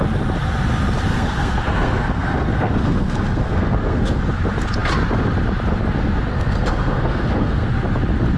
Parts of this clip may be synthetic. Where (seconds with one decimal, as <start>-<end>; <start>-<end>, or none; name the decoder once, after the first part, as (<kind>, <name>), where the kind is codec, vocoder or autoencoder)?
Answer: 1.1-4.2 (codec, SNAC); 6.3-7.7